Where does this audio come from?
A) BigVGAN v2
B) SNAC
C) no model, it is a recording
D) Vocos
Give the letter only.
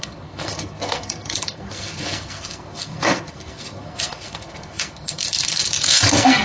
B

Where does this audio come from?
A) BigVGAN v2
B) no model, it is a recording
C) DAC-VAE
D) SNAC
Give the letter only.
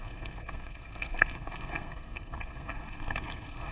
D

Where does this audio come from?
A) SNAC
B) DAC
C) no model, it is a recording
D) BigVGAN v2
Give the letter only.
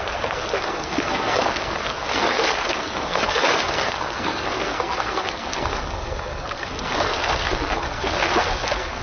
A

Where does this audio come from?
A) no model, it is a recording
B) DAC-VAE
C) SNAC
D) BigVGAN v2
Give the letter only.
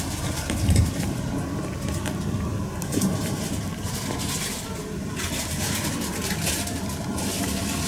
A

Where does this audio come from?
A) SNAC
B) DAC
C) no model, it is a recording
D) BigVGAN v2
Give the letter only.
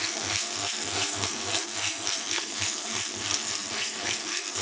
A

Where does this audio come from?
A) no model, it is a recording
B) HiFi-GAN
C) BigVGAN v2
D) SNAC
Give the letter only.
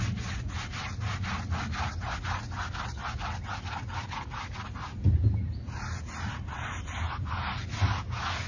A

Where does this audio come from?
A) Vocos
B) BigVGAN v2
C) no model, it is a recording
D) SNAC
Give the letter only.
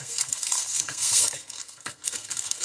D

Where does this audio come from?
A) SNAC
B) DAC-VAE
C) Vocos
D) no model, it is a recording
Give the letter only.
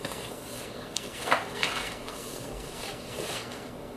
A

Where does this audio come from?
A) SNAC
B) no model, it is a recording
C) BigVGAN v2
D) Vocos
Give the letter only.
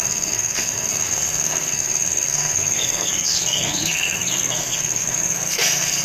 A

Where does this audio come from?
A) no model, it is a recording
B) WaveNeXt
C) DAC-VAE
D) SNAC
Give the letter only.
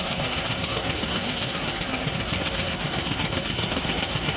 D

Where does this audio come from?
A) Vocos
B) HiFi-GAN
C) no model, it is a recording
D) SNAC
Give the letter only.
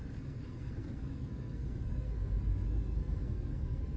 D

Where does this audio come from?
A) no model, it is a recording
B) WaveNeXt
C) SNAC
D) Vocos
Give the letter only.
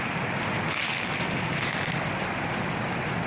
A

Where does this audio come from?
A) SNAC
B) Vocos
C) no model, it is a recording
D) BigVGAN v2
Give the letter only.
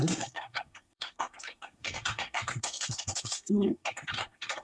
A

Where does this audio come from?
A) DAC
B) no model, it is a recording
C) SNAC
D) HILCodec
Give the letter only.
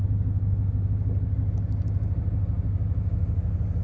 B